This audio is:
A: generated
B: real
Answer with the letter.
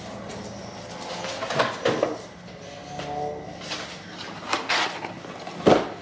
B